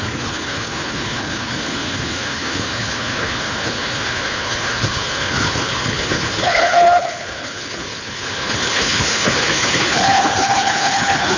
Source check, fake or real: fake